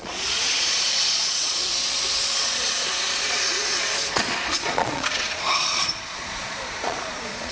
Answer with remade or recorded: remade